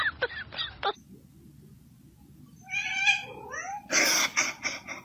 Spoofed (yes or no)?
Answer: no